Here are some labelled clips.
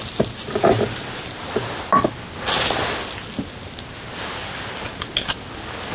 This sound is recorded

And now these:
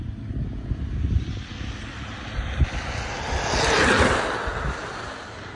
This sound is recorded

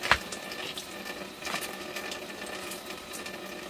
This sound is remade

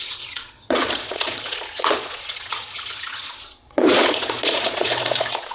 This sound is remade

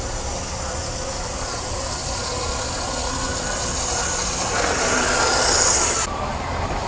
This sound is recorded